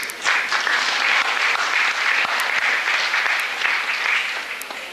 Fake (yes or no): no